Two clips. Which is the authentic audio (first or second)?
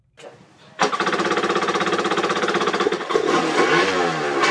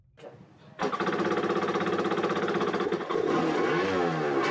second